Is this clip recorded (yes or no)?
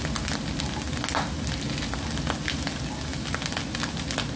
yes